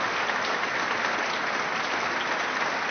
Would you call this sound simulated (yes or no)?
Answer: no